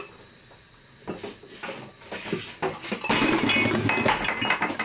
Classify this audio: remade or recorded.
recorded